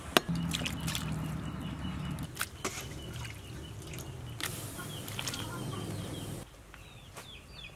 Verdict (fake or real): real